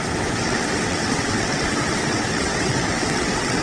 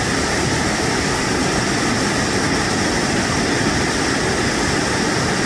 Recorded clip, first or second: second